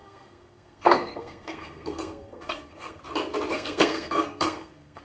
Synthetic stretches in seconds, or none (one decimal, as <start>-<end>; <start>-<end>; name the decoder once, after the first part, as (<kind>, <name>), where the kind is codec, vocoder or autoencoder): 0.0-3.0 (codec, SNAC); 3.5-5.0